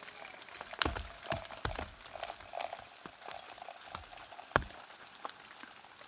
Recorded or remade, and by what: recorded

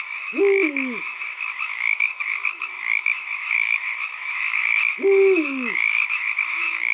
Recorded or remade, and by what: remade, autoencoder, DAC-VAE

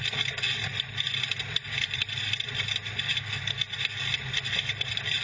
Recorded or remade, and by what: recorded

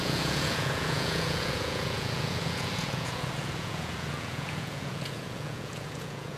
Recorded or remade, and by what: remade, vocoder, Vocos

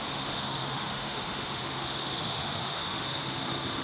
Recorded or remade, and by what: remade, autoencoder, DAC-VAE